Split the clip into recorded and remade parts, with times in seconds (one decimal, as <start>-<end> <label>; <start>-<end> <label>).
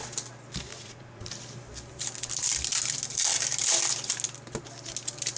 0.0-0.7 recorded; 0.7-1.3 remade; 1.3-5.4 recorded